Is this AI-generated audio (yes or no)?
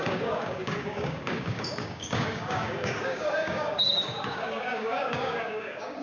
yes